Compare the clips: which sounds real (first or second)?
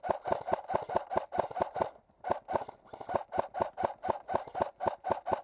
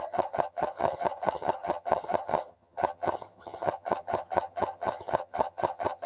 first